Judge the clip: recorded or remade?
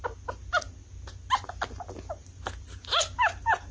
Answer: recorded